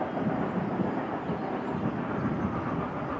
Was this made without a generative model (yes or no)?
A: yes